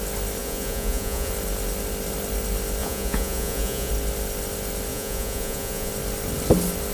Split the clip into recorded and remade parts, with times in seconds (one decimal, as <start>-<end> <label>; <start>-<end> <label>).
0.0-0.4 recorded; 0.4-1.3 remade; 1.3-2.8 recorded; 2.8-3.9 remade; 3.9-4.9 recorded; 4.9-5.9 remade; 5.9-6.9 recorded